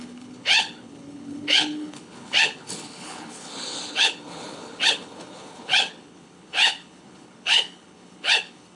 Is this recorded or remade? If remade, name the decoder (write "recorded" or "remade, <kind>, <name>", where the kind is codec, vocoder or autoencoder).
remade, codec, HILCodec